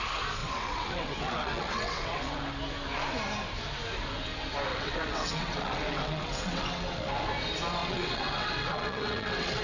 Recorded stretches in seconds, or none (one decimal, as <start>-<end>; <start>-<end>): 0.0-0.4; 2.4-4.7; 7.3-7.8